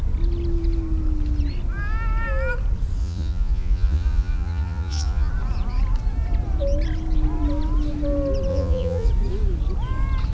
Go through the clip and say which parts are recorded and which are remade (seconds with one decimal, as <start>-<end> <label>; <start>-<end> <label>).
0.0-3.0 recorded; 3.0-5.3 remade; 5.3-8.5 recorded; 8.5-9.1 remade; 9.1-10.3 recorded